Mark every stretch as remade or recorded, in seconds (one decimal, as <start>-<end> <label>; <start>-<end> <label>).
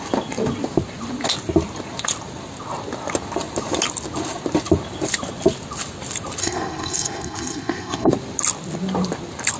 0.0-6.4 recorded; 6.4-8.1 remade; 8.1-9.6 recorded